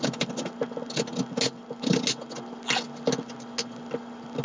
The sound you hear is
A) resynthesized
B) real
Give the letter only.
B